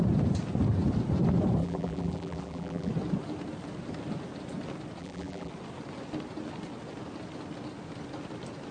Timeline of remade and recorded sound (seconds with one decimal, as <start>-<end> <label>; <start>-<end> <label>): 0.0-1.6 recorded; 1.6-2.9 remade; 2.9-5.0 recorded; 5.0-5.5 remade; 5.5-8.7 recorded